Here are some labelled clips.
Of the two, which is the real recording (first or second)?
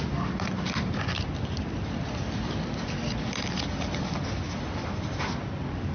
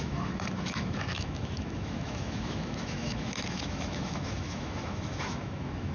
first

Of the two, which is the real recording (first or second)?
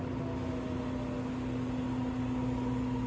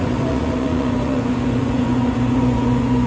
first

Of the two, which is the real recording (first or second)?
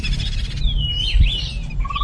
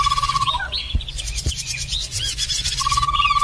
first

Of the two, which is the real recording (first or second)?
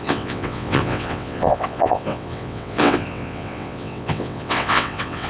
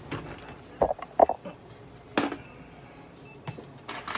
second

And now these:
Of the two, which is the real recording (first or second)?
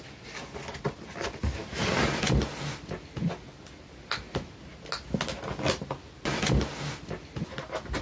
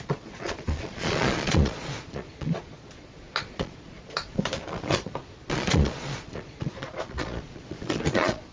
first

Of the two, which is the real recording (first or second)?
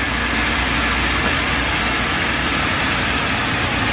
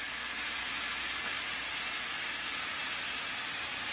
second